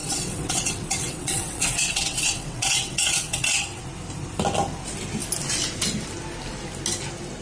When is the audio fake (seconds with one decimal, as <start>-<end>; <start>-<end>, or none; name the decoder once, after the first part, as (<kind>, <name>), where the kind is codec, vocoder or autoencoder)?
0.0-3.8 (vocoder, WaveNeXt)